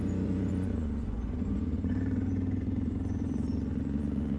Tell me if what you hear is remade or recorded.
remade